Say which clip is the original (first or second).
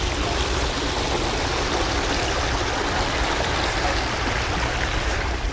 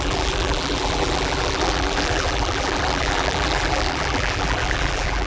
first